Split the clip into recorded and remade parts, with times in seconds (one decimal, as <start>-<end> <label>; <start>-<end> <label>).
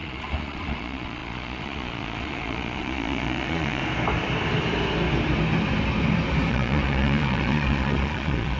0.0-3.8 remade; 3.8-6.5 recorded; 6.5-8.6 remade